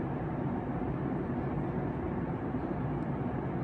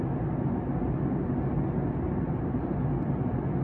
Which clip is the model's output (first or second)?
first